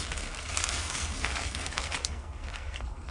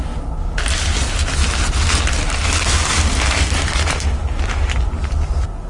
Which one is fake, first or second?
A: first